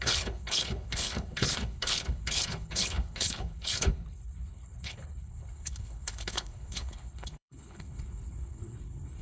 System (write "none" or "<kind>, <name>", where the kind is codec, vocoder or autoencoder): codec, HILCodec